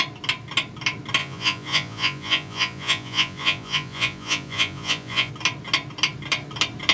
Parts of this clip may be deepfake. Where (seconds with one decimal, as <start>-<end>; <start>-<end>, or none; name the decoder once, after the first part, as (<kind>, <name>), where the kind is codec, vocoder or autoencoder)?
1.2-5.3 (vocoder, Vocos)